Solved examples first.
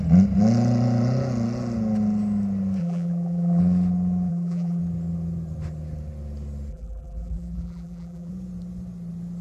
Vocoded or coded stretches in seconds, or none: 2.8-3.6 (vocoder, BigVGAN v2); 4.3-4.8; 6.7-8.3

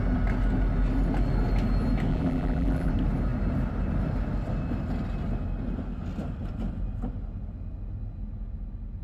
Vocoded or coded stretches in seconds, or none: 2.1-2.9 (vocoder, BigVGAN v2)

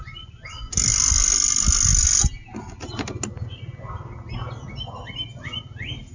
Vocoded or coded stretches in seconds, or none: none

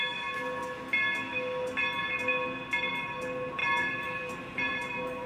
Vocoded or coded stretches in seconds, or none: 3.6-5.3 (vocoder, BigVGAN v2)

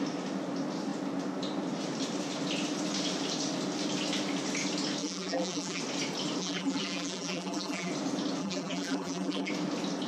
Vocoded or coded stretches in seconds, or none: 5.0-5.8 (vocoder, BigVGAN v2); 6.4-7.9; 8.4-9.5

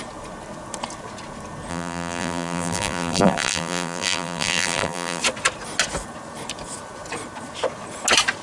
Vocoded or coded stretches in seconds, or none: 1.7-5.2 (vocoder, BigVGAN v2)

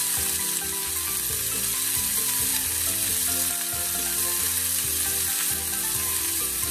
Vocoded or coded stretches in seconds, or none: 6.0-6.7 (vocoder, BigVGAN v2)

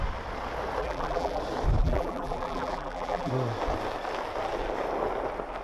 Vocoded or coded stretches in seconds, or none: 0.8-1.4 (vocoder, BigVGAN v2); 1.8-3.3